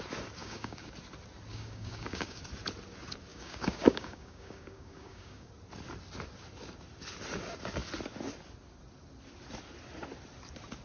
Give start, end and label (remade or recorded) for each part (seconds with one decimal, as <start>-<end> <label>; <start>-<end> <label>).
0.0-0.4 recorded; 0.4-0.9 remade; 0.9-1.5 recorded; 1.5-2.4 remade; 2.4-3.3 recorded; 3.3-5.5 remade; 5.5-10.8 recorded